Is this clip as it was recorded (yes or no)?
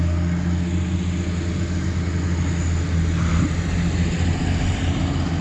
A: yes